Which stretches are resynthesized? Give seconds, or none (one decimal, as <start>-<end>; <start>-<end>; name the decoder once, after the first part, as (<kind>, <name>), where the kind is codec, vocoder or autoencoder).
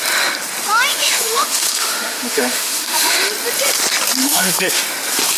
0.9-3.3 (autoencoder, DAC-VAE); 4.2-4.8